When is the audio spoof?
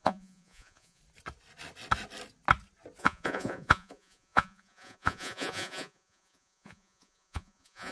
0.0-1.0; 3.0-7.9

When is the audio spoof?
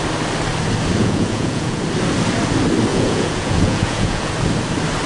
1.0-1.8; 2.9-4.3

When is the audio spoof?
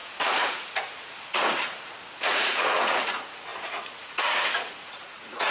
0.0-5.5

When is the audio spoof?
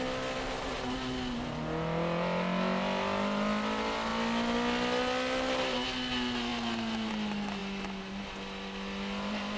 none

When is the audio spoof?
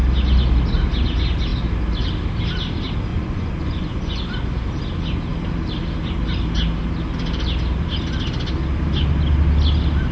3.1-4.2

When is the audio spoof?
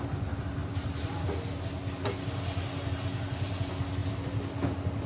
none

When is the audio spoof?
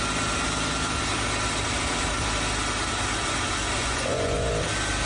3.8-4.5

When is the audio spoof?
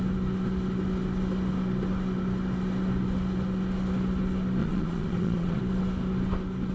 4.6-5.6